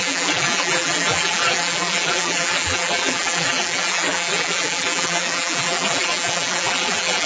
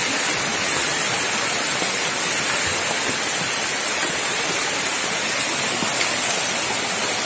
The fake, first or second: first